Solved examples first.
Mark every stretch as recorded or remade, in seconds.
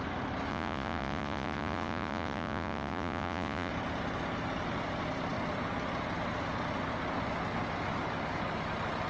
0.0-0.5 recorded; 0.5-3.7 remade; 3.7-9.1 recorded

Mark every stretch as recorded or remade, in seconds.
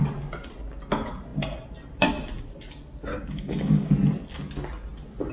0.0-3.1 recorded; 3.1-3.9 remade; 3.9-5.3 recorded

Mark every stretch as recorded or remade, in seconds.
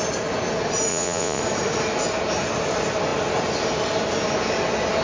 0.0-0.9 recorded; 0.9-1.4 remade; 1.4-5.0 recorded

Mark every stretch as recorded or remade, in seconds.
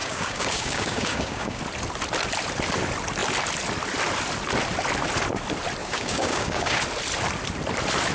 0.0-1.6 remade; 1.6-5.8 recorded; 5.8-6.8 remade; 6.8-8.1 recorded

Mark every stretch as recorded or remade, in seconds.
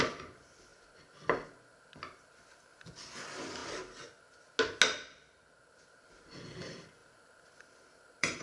0.0-0.7 remade; 0.7-2.0 recorded; 2.0-3.6 remade; 3.6-6.6 recorded; 6.6-8.4 remade